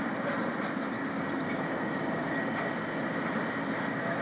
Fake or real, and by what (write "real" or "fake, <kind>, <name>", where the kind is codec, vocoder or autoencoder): real